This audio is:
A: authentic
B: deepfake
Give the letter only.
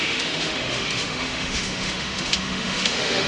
B